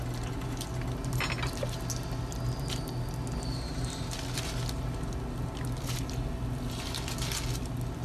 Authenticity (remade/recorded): recorded